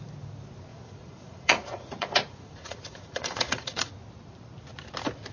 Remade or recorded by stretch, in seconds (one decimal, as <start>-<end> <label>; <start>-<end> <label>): 0.0-0.7 recorded; 0.7-3.9 remade; 3.9-5.3 recorded